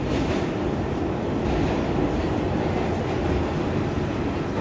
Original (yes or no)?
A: yes